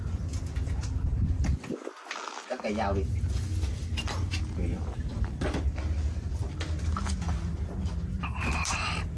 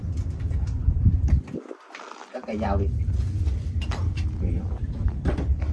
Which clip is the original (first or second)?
first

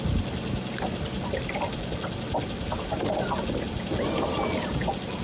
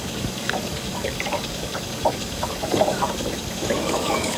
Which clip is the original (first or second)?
first